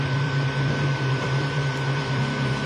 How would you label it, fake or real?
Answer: fake